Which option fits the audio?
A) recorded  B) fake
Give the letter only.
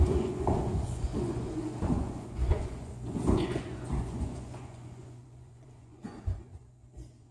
B